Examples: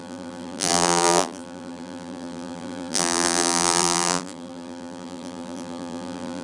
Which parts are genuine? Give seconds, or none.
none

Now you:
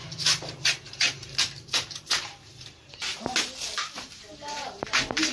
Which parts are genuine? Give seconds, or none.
3.2-3.8

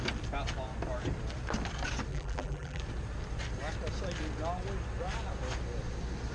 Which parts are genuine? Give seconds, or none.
0.0-2.1; 2.8-6.3

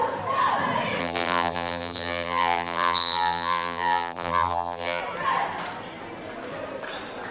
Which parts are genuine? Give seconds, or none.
0.0-1.0; 5.0-7.3

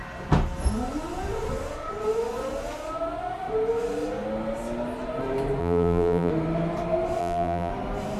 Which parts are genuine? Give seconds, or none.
0.0-5.6; 6.3-7.2; 7.7-8.2

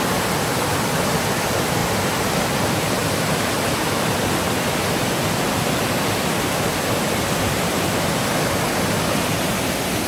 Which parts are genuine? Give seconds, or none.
1.8-2.6